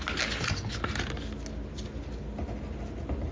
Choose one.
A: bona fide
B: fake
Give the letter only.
A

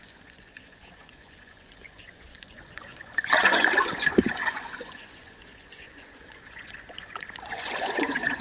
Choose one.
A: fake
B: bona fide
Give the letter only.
A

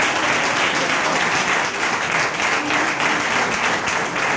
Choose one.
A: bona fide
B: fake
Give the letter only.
A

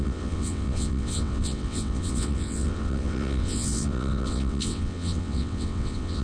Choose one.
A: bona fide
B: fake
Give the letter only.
B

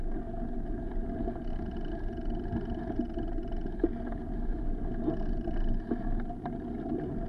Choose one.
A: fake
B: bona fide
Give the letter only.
B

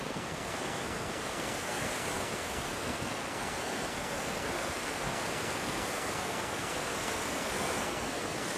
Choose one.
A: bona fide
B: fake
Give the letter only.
B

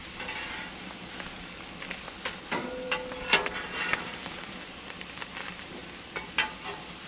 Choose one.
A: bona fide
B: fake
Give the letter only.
B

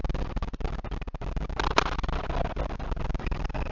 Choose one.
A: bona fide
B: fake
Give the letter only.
A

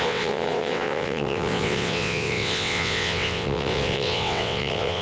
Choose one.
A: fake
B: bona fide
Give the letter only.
A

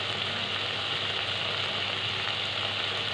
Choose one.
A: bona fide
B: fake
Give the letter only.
A